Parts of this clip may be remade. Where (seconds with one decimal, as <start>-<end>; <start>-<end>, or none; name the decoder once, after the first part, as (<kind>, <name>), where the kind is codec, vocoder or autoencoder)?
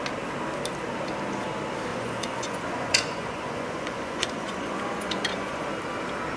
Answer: 1.9-5.7 (vocoder, Vocos)